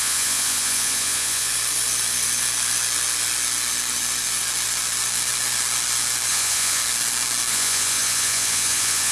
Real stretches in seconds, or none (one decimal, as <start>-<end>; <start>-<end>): 1.5-6.3; 6.8-7.5